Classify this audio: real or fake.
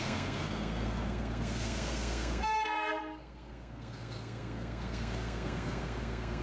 fake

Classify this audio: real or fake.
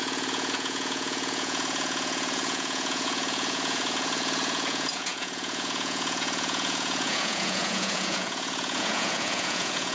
fake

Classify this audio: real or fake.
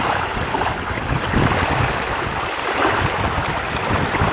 real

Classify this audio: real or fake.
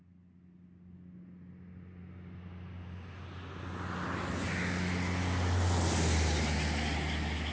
real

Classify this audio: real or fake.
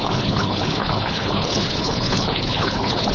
fake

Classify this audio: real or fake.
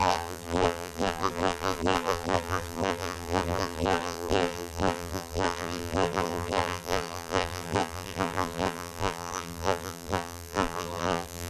fake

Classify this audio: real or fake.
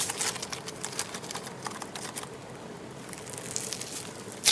real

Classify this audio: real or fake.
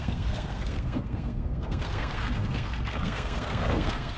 fake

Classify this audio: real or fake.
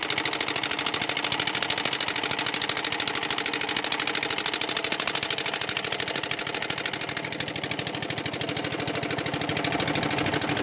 real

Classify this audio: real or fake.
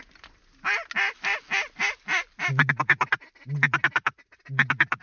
real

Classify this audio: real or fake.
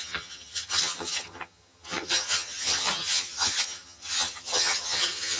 fake